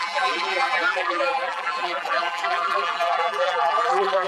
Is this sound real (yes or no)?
no